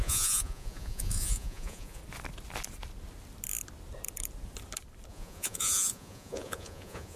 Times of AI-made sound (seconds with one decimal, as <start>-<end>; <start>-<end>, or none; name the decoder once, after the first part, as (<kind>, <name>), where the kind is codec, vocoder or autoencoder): 0.0-2.0 (vocoder, Vocos); 5.1-7.2